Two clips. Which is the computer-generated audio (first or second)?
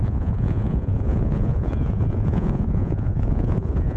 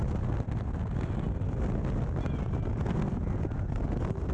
first